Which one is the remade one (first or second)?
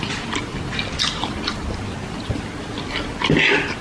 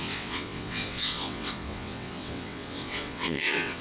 second